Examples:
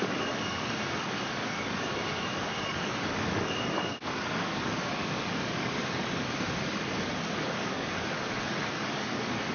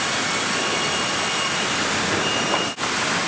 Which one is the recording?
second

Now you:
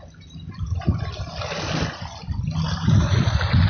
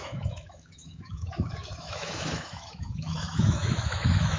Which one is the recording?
first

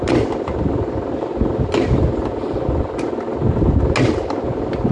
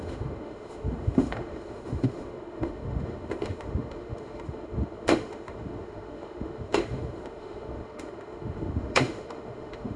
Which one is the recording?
first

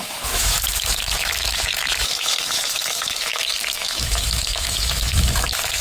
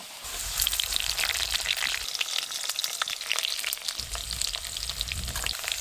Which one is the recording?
second